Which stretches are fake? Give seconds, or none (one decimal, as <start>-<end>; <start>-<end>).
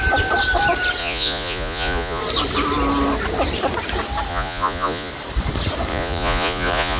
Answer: 1.0-2.2; 4.3-5.1; 5.9-7.0